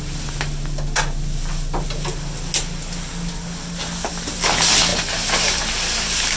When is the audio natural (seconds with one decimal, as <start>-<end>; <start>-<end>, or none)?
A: 0.0-6.4